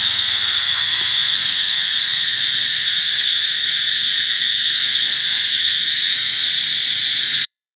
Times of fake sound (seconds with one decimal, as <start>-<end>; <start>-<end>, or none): 0.0-6.5; 7.2-7.8